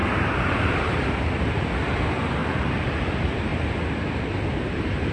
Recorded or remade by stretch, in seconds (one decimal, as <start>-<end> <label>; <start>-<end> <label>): 0.0-1.3 remade; 1.3-2.4 recorded; 2.4-3.0 remade; 3.0-3.5 recorded; 3.5-5.1 remade